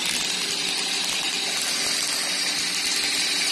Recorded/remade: recorded